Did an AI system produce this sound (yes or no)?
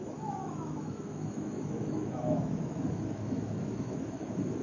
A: yes